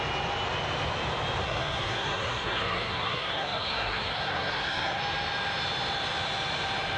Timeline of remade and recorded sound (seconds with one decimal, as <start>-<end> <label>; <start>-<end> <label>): 0.0-1.4 recorded; 1.4-5.0 remade; 5.0-7.0 recorded